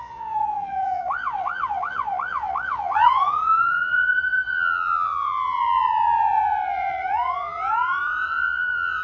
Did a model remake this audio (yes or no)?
yes